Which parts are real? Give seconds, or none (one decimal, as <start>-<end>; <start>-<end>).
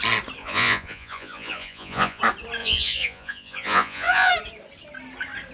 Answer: 0.0-0.4; 2.2-2.6; 4.3-5.5